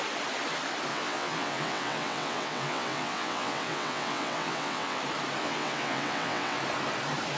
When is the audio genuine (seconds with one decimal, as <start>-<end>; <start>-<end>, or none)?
0.0-0.9; 5.0-5.4; 6.6-7.4